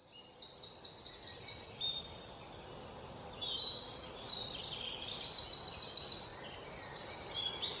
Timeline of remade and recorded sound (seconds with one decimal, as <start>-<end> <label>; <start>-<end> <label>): 0.0-7.8 recorded